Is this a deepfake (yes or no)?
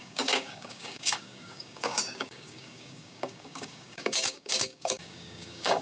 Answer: yes